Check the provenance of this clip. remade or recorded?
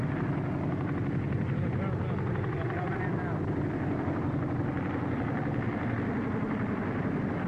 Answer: recorded